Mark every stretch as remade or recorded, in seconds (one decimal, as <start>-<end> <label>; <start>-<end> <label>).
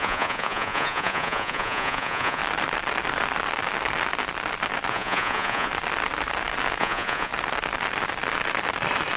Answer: 0.0-2.4 remade; 2.4-4.9 recorded; 4.9-5.7 remade; 5.7-6.8 recorded; 6.8-7.3 remade; 7.3-9.2 recorded